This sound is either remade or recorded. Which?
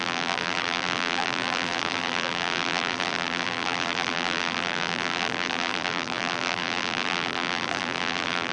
remade